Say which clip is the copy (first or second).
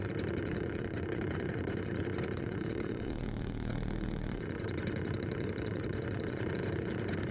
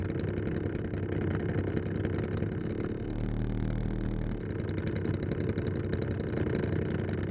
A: first